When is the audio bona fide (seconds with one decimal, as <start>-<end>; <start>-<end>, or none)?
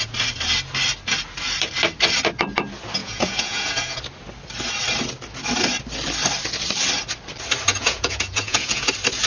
0.0-3.0; 4.0-7.7; 8.9-9.3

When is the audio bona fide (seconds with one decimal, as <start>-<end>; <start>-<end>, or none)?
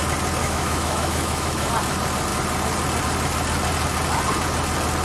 0.0-0.4; 1.7-5.0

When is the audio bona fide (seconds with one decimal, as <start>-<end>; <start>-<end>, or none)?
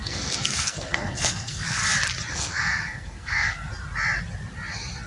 1.8-2.3; 3.7-5.1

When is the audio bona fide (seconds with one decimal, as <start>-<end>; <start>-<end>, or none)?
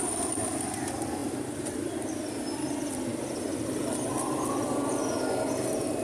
0.0-6.0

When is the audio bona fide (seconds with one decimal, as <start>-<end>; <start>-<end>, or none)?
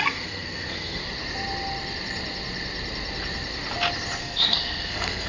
1.0-4.2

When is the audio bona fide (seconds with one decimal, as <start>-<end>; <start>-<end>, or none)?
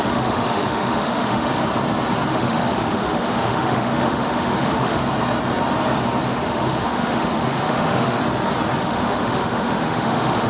1.5-2.3; 5.0-6.3; 8.2-8.8